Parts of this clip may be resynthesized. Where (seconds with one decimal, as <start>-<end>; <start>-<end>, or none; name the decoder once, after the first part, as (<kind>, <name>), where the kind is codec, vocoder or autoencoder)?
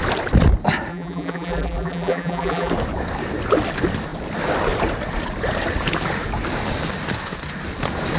0.9-2.7 (vocoder, BigVGAN v2)